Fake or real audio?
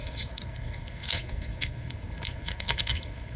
fake